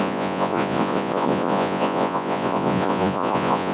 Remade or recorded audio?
remade